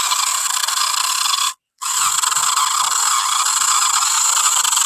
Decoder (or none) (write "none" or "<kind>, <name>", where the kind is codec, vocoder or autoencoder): none